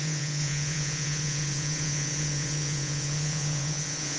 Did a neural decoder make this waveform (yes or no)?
yes